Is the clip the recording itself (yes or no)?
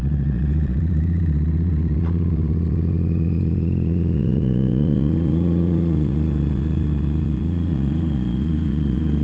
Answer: no